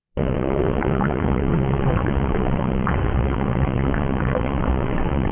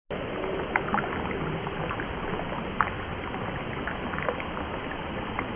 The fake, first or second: first